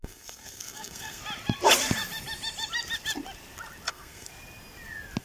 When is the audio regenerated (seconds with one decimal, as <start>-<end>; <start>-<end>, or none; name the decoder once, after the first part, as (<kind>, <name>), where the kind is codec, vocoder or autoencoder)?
0.0-1.2 (codec, SNAC); 3.9-4.3